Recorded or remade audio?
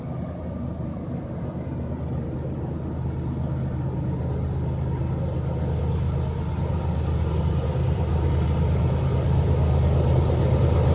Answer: recorded